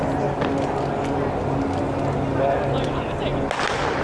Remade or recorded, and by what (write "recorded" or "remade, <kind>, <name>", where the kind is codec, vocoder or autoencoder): recorded